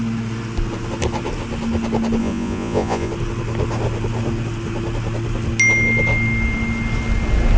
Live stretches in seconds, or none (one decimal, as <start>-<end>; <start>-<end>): 0.0-2.2; 3.1-7.6